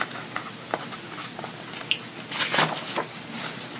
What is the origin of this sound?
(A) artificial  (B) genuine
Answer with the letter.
B